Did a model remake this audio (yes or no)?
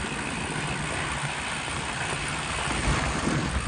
no